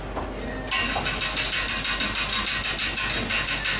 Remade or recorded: recorded